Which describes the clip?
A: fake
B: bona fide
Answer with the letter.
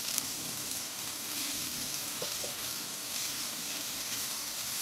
A